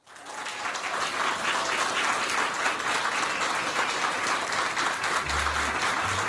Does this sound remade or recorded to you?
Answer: recorded